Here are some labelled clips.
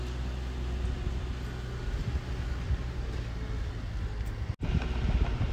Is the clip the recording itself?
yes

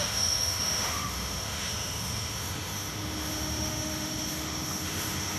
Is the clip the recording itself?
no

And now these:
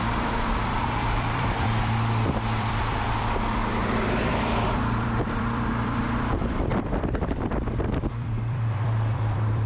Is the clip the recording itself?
no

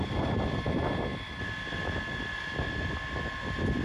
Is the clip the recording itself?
yes